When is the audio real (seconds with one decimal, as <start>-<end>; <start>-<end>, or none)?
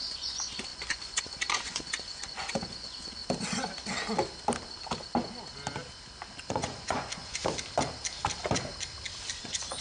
3.2-6.4; 7.4-9.3